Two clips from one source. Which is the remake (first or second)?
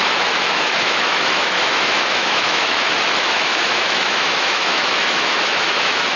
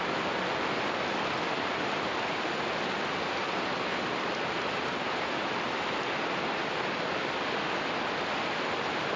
first